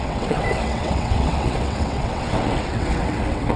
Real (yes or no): no